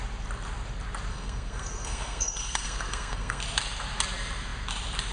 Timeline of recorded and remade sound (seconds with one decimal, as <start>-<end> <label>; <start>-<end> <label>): 0.0-1.1 recorded; 1.1-3.4 remade; 3.4-5.1 recorded